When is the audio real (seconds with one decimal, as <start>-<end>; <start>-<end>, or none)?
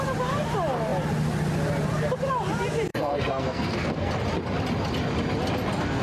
0.0-2.9; 4.1-6.0